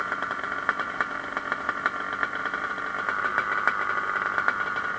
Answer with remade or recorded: recorded